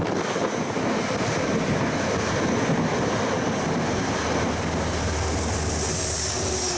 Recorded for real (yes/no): yes